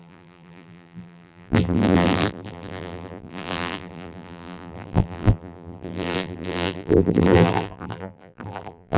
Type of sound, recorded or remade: remade